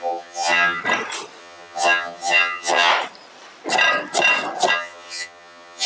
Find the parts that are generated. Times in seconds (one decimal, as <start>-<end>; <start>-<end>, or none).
0.0-0.8; 1.4-2.9; 4.7-5.9

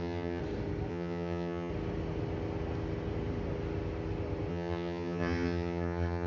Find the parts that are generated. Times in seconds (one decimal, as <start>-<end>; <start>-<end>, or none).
0.0-0.4; 0.9-1.7; 4.5-6.3

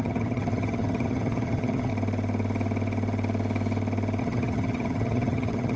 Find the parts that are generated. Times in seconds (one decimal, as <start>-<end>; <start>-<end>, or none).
0.0-1.9; 4.2-5.8

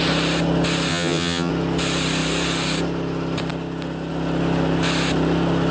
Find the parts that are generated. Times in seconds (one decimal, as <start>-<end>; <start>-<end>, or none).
0.9-1.5

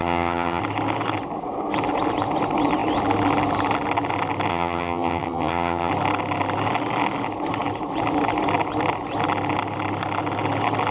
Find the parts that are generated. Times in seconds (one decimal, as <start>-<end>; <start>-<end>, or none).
0.0-0.6; 4.5-5.9

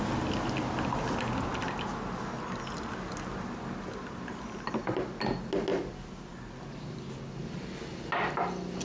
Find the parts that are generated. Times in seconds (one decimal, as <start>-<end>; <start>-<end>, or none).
none

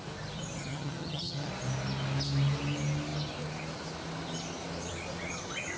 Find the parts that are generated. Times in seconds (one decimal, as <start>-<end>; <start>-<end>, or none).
0.6-1.5

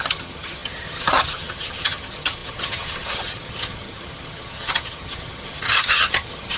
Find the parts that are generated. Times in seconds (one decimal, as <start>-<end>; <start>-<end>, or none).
0.0-6.6